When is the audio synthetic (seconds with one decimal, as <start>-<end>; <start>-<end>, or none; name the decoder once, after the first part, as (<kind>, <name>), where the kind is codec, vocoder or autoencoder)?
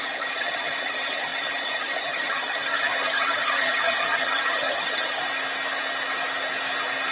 0.0-5.2 (vocoder, HiFi-GAN)